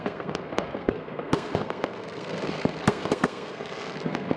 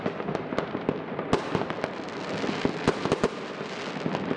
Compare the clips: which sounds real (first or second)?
second